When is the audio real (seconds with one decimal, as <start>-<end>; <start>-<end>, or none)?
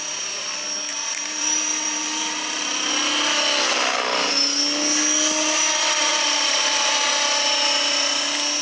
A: 0.0-0.9; 2.9-6.1; 7.1-8.6